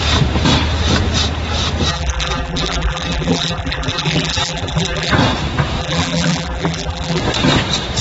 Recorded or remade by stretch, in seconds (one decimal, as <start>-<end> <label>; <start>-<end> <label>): 0.0-1.9 recorded; 1.9-5.1 remade; 5.1-5.8 recorded; 5.8-7.2 remade; 7.2-8.0 recorded